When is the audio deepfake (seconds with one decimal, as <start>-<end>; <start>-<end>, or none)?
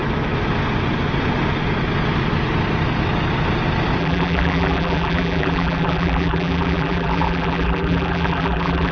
4.0-8.9